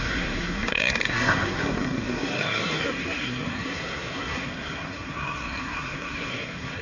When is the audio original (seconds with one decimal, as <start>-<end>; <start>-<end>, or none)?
none

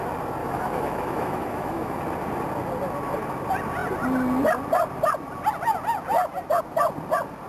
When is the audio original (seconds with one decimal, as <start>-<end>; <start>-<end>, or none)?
0.0-0.4; 2.0-7.5